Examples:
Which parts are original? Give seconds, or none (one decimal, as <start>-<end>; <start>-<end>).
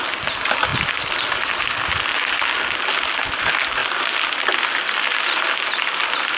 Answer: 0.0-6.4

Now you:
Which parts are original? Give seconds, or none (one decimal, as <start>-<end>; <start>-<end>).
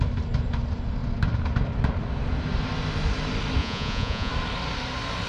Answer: 0.0-3.6; 4.3-5.3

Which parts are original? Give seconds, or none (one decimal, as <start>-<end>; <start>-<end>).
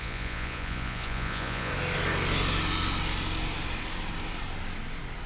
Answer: 1.7-5.3